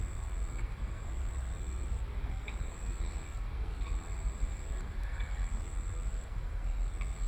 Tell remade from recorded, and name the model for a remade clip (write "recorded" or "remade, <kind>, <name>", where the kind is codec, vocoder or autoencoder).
remade, codec, SNAC